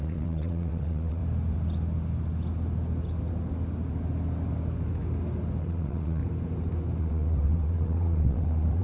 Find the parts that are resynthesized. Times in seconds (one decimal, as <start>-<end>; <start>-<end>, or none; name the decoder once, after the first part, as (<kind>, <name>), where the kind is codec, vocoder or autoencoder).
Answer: 0.0-1.2 (vocoder, WaveNeXt); 5.6-6.2; 7.0-8.8